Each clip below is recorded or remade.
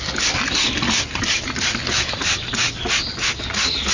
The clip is recorded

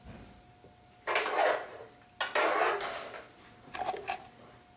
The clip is recorded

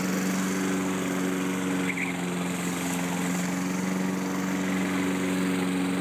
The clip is recorded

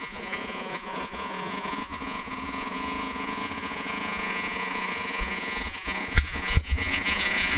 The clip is remade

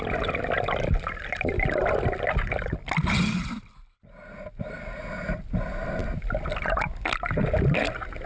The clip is recorded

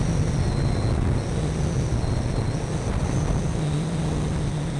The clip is recorded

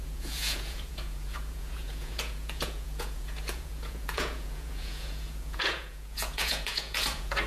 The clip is remade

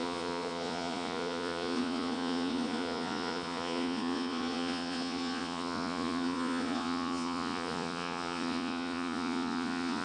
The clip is remade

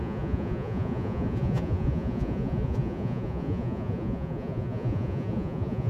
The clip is remade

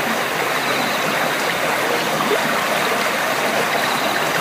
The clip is recorded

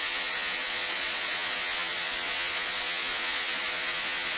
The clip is remade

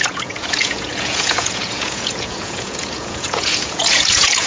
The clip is remade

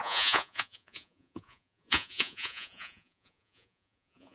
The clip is remade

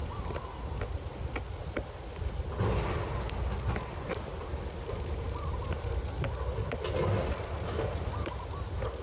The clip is recorded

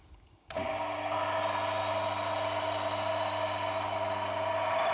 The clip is recorded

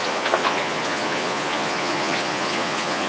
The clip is remade